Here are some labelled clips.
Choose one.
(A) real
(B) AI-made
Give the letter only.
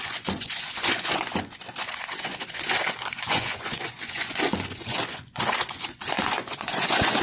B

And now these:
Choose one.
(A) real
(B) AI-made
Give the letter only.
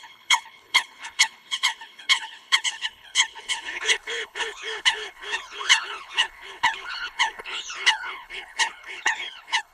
B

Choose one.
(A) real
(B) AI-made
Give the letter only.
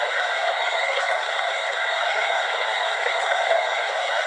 B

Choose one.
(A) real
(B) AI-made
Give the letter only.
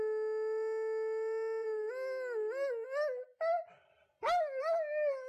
A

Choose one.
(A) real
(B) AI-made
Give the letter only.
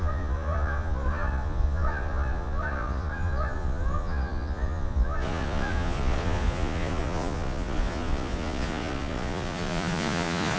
B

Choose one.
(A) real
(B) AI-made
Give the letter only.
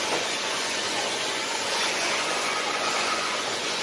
B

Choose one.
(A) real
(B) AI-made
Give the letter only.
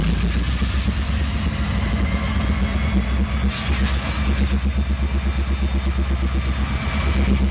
A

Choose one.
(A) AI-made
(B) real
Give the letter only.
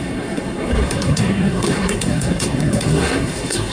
A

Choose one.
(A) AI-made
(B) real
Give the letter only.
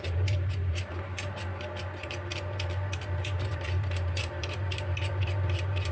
A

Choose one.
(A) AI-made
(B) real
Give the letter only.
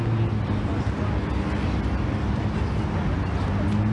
B